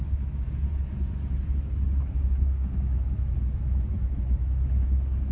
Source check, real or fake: fake